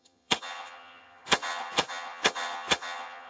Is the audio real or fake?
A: fake